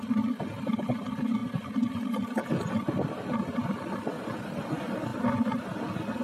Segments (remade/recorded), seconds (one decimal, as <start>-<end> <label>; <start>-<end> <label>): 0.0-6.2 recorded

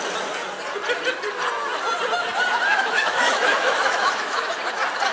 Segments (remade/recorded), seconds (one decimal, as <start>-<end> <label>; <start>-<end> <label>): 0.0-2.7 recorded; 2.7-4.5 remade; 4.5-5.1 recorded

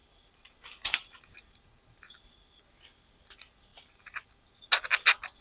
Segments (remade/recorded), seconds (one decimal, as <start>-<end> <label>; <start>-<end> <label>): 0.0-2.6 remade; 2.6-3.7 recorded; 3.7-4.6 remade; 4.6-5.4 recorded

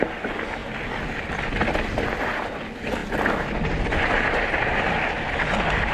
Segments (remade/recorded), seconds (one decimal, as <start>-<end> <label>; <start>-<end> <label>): 0.0-5.9 recorded